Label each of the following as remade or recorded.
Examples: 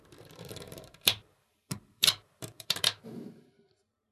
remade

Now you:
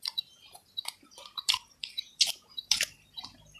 remade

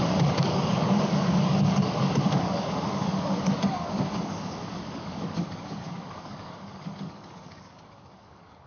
remade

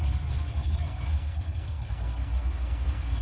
remade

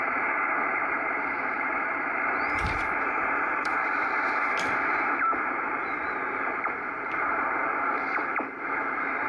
remade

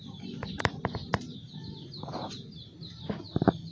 recorded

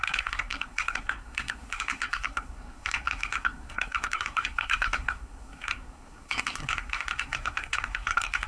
remade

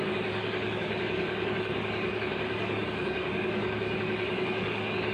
remade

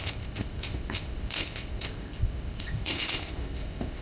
remade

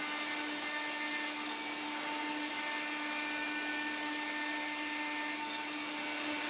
recorded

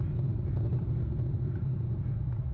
recorded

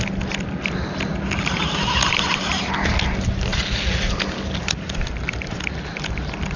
recorded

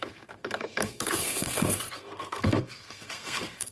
remade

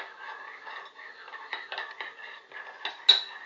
recorded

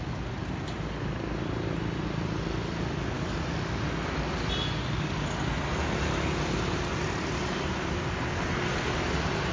recorded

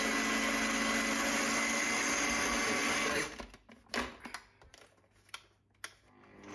recorded